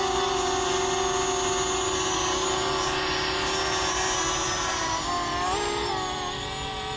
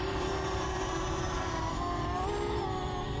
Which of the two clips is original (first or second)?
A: first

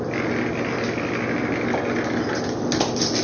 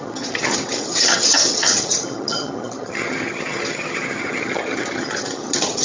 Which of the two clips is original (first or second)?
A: first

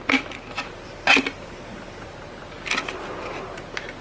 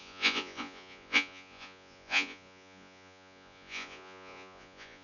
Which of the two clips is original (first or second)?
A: first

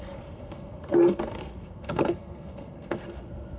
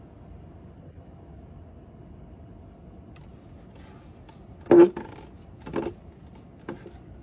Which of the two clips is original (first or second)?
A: second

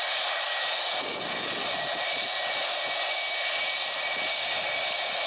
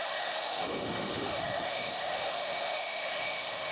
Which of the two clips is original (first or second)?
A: first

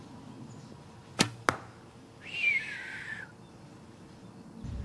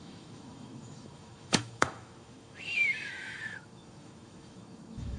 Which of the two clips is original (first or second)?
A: first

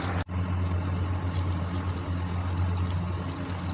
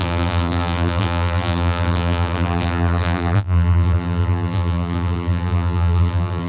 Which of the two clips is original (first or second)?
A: first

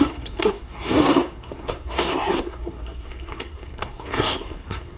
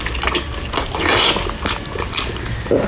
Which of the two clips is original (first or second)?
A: second